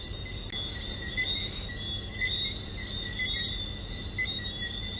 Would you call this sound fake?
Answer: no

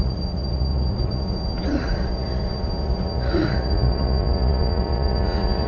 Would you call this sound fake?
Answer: yes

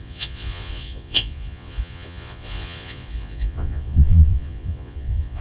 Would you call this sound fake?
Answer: yes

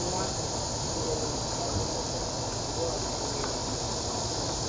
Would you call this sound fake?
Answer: no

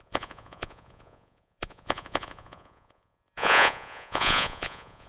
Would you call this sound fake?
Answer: yes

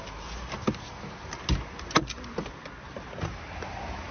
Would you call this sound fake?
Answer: no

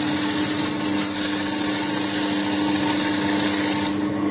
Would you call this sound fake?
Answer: no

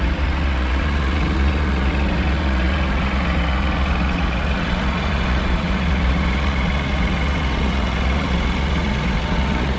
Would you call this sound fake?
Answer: yes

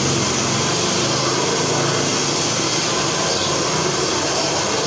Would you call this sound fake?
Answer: no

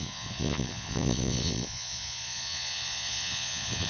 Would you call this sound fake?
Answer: yes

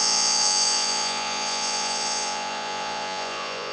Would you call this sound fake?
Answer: yes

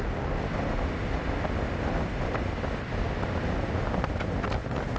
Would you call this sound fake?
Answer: no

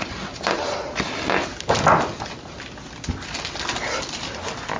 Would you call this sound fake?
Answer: no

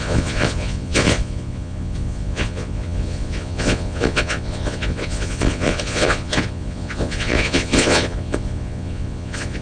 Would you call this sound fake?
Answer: yes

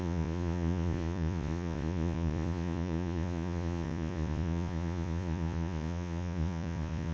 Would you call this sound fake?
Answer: yes